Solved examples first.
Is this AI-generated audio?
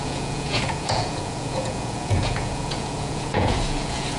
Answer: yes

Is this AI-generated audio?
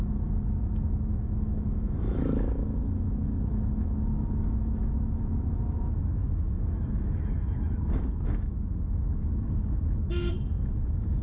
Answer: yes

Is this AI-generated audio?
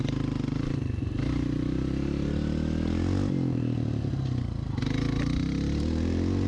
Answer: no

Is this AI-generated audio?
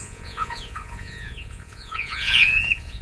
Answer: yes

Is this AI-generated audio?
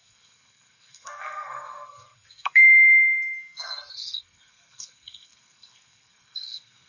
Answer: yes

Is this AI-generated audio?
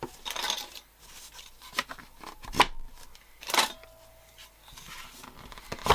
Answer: no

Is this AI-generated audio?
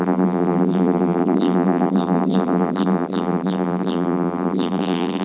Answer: yes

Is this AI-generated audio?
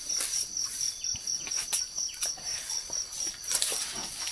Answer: no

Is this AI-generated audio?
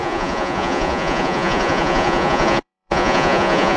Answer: yes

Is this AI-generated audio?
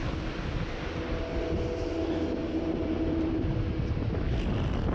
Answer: no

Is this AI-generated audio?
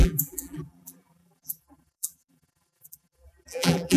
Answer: yes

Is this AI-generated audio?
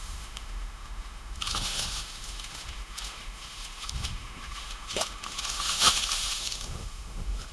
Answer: yes